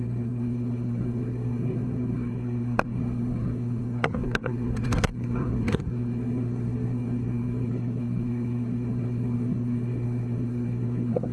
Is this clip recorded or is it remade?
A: remade